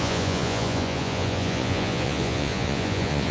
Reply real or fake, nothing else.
fake